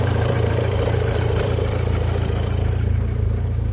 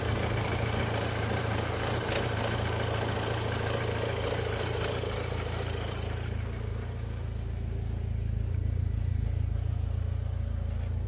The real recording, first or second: second